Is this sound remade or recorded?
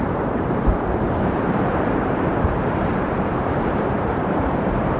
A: remade